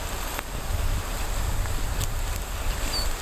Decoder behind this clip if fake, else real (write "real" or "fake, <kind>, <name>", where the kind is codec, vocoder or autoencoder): real